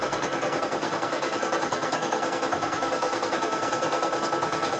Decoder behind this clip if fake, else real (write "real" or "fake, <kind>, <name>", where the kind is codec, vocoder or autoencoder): fake, codec, SNAC